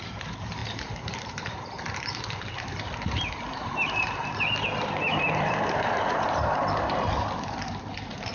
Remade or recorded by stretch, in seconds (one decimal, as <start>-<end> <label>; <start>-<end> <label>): 0.0-4.2 remade; 4.2-5.2 recorded; 5.2-8.3 remade